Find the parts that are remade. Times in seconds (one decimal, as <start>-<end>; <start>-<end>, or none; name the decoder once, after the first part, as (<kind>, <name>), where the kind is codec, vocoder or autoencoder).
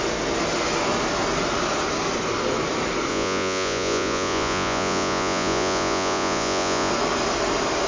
3.1-6.9 (vocoder, Vocos)